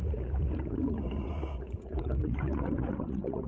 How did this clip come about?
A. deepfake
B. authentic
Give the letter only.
A